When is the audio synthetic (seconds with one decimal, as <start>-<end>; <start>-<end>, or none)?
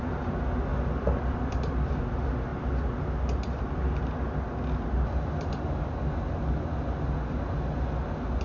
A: 0.7-2.0